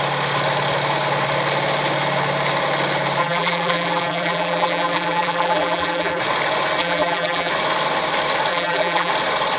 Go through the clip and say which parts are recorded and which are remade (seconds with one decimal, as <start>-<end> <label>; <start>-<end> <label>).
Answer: 0.0-3.2 recorded; 3.2-6.2 remade; 6.2-6.8 recorded; 6.8-7.5 remade; 7.5-8.5 recorded; 8.5-9.1 remade; 9.1-9.6 recorded